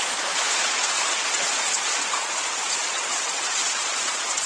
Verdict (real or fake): fake